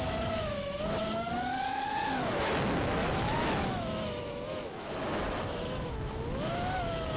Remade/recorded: remade